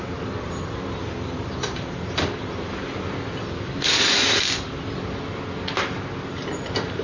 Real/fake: real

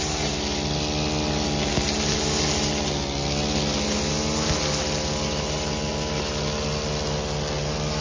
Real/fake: real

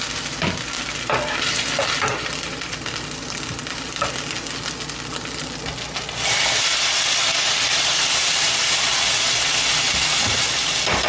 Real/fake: real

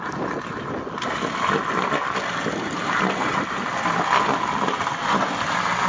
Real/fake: real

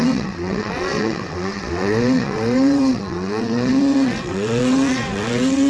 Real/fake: fake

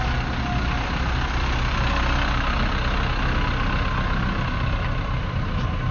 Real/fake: real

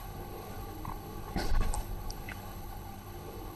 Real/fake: fake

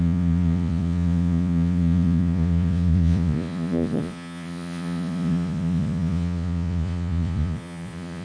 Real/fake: fake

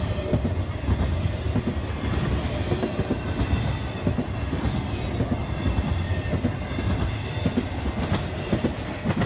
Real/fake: real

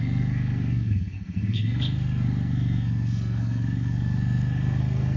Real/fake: fake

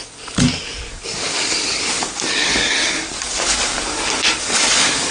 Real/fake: fake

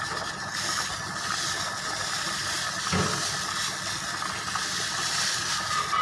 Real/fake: real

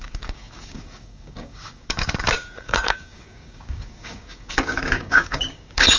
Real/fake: fake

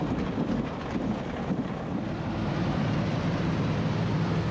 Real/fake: real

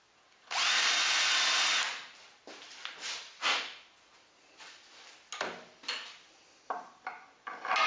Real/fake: real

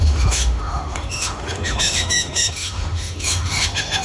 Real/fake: fake